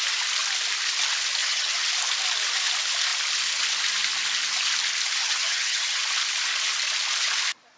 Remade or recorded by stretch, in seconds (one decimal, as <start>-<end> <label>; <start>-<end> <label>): 0.0-1.4 recorded; 1.4-1.9 remade; 1.9-5.2 recorded; 5.2-6.0 remade; 6.0-7.8 recorded